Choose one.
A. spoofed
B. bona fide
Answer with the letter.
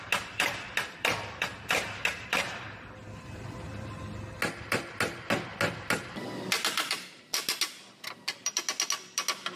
B